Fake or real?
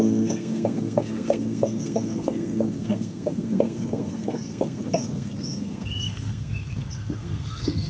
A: fake